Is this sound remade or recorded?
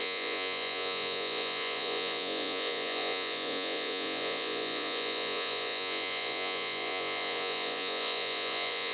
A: remade